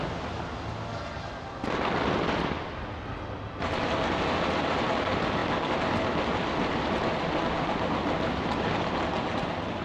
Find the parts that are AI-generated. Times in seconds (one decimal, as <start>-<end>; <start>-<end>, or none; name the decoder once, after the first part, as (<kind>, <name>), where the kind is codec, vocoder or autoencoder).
none